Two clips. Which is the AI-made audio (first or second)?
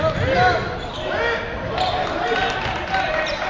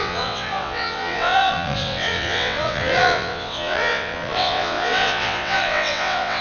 second